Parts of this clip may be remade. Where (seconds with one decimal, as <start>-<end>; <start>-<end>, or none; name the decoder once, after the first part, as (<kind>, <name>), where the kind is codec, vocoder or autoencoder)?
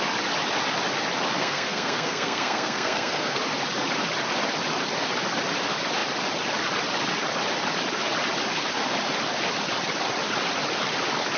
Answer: 1.4-3.4 (codec, SNAC)